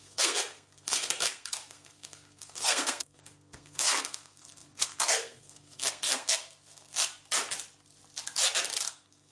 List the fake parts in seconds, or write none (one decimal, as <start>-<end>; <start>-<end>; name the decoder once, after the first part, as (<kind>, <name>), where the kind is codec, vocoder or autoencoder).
0.0-7.0 (codec, SNAC); 8.9-9.3